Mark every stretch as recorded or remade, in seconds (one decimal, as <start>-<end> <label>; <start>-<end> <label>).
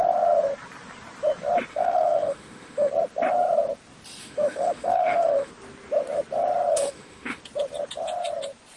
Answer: 0.0-1.7 recorded; 1.7-2.9 remade; 2.9-4.2 recorded; 4.2-5.5 remade; 5.5-6.7 recorded; 6.7-7.4 remade; 7.4-8.8 recorded